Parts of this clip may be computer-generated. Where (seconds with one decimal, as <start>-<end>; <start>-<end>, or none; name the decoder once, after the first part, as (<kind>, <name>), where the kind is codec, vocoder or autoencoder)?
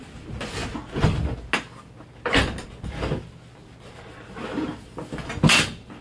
none